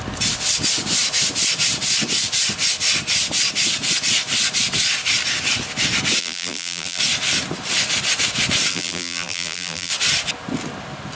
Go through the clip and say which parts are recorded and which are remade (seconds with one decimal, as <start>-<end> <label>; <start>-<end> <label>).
0.0-6.2 recorded; 6.2-7.0 remade; 7.0-8.7 recorded; 8.7-9.9 remade; 9.9-11.1 recorded